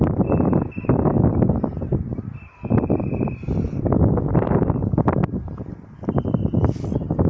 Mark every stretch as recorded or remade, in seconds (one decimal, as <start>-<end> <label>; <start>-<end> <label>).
0.0-7.3 recorded